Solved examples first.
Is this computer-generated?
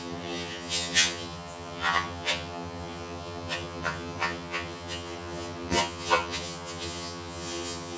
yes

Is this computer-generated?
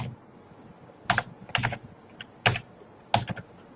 no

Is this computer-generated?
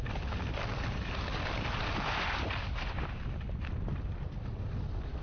no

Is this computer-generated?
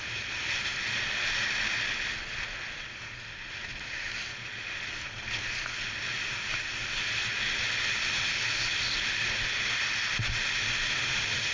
no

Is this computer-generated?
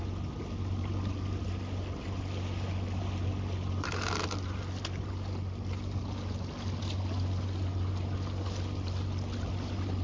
no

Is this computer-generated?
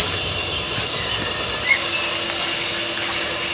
no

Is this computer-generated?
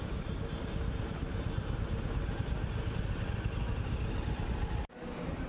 no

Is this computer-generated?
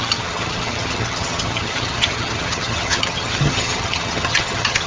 yes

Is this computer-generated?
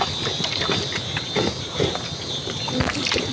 no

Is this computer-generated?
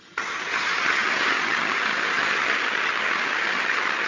yes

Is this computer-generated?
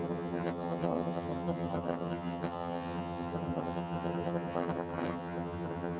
yes